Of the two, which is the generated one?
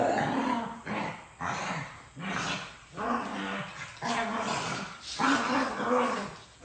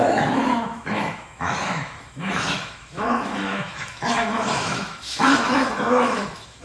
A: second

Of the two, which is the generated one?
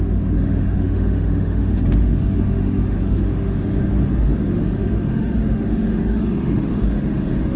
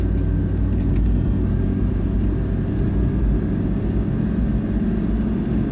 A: first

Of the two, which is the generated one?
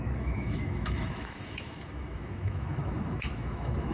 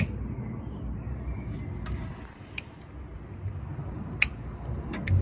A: first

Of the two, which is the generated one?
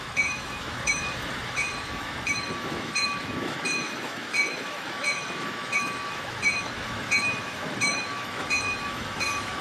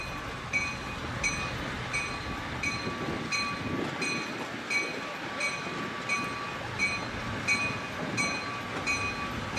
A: first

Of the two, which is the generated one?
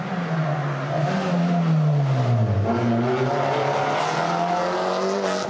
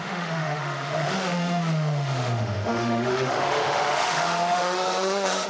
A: second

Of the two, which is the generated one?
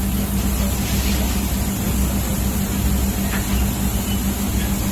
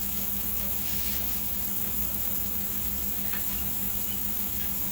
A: second